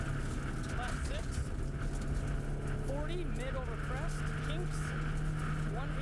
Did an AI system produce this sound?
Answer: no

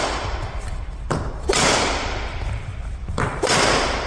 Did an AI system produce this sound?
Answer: yes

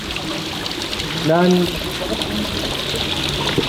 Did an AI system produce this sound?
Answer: no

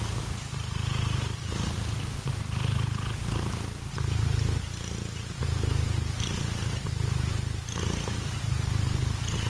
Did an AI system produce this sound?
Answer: no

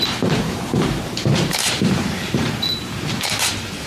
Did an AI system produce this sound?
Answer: yes